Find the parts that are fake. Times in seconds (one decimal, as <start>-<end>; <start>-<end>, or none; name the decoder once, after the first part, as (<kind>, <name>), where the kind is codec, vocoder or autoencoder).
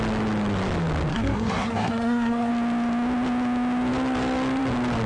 1.1-2.5 (codec, SNAC)